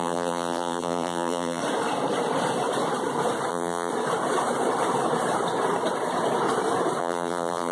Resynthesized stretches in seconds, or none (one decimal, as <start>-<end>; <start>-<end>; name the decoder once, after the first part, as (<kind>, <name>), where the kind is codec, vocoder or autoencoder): 0.0-1.6 (vocoder, BigVGAN v2); 3.5-3.9; 7.0-7.7